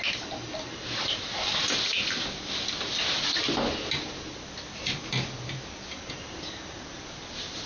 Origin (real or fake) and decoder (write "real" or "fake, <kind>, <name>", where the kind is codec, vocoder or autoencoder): real